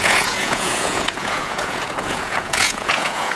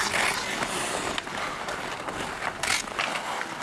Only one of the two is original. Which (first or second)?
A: second